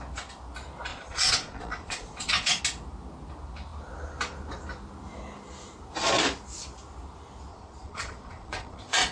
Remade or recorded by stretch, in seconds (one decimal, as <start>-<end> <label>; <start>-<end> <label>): 0.0-0.9 recorded; 0.9-2.6 remade; 2.6-7.5 recorded; 7.5-9.1 remade